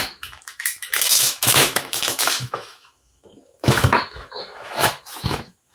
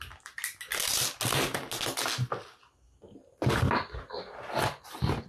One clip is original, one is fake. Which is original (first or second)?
second